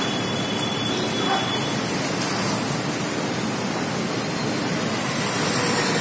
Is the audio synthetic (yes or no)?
no